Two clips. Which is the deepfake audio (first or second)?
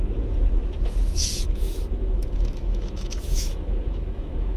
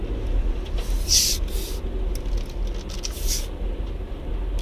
first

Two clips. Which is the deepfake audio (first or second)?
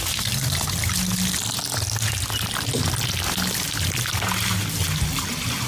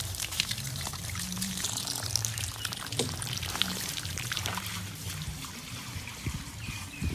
second